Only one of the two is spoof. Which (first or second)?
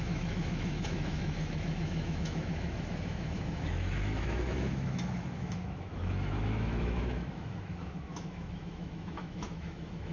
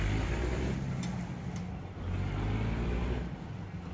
first